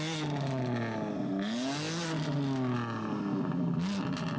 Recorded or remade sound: recorded